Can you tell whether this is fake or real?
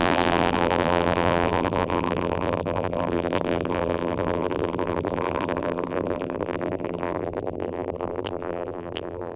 fake